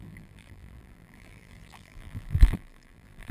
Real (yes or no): no